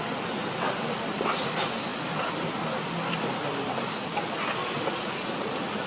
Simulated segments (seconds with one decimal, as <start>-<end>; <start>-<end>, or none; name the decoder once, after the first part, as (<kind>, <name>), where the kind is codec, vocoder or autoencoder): none